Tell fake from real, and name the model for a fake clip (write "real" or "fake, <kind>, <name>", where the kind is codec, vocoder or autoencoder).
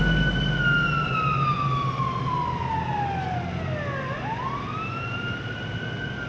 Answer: real